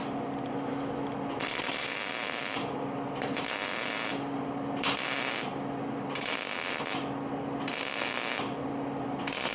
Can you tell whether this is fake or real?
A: real